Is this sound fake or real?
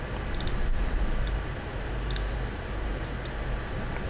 real